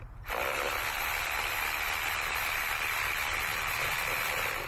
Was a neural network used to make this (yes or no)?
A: yes